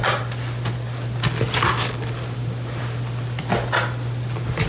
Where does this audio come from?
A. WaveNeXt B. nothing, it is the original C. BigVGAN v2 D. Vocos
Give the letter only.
B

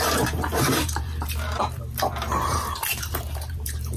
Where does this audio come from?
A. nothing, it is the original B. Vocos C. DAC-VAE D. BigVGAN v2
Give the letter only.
D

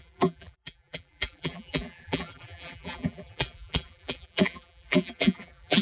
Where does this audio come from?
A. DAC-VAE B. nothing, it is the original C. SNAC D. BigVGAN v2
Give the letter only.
D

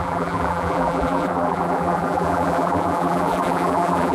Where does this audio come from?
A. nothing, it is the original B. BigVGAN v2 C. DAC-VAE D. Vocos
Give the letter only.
B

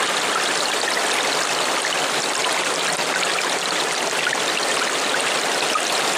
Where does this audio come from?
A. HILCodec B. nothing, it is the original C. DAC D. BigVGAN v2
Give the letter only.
B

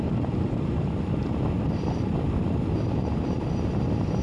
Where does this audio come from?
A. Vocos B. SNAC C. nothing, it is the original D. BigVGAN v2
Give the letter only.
D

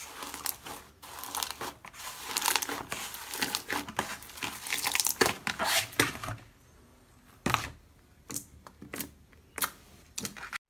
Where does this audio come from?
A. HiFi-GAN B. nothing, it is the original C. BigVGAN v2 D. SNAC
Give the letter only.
B